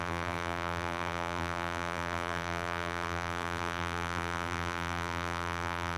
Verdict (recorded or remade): remade